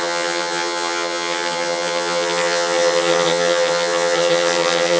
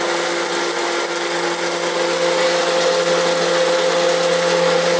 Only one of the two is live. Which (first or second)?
second